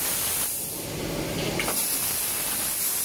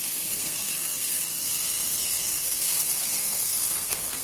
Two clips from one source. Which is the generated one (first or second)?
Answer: second